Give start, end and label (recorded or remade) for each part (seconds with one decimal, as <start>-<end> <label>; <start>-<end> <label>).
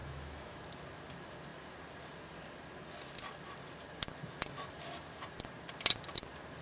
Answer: 0.0-0.6 remade; 0.6-6.6 recorded